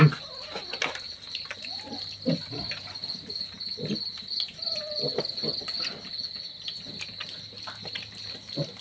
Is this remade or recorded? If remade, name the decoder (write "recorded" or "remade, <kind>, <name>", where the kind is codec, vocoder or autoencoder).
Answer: recorded